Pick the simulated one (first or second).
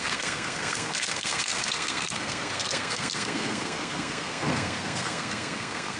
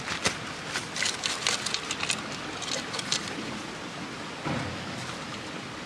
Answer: first